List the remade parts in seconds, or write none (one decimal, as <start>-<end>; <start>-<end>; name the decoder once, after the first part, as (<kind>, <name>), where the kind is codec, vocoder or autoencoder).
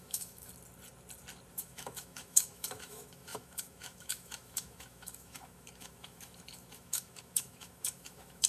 0.0-0.5 (autoencoder, DAC-VAE); 1.5-8.5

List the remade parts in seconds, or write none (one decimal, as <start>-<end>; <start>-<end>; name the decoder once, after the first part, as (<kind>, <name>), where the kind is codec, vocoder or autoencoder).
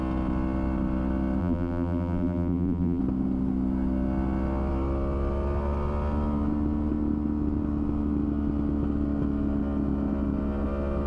1.4-3.0 (vocoder, BigVGAN v2)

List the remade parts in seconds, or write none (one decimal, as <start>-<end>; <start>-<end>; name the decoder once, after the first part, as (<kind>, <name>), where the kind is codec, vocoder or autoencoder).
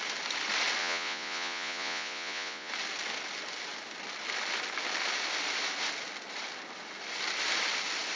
0.8-2.7 (vocoder, Vocos)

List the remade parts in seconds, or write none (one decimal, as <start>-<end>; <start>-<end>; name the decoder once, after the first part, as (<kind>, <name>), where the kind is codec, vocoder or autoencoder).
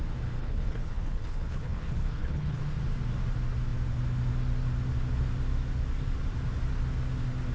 0.4-2.6 (codec, HILCodec)